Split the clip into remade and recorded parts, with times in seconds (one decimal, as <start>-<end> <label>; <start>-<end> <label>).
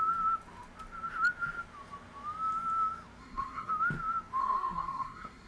0.0-3.2 recorded; 3.2-3.7 remade; 3.7-4.4 recorded; 4.4-5.5 remade